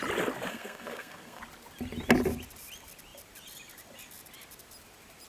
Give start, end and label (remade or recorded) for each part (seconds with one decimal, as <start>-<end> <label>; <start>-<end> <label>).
0.0-0.5 recorded; 0.5-1.4 remade; 1.4-5.3 recorded